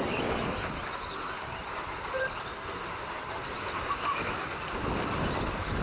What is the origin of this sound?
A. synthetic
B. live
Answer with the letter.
B